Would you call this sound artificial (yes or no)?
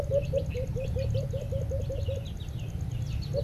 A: no